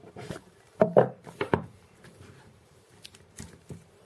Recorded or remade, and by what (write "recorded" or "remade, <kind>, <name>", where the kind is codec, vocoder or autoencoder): remade, vocoder, BigVGAN v2